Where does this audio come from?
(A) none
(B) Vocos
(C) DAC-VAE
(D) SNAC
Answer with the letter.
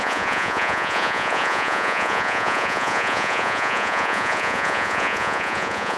B